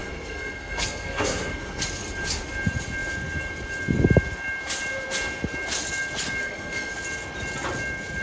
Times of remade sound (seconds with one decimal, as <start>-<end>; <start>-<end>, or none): 0.0-1.8; 6.4-6.9